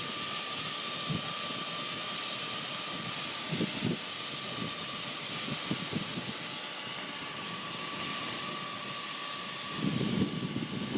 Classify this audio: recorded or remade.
recorded